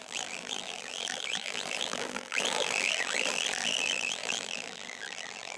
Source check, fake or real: fake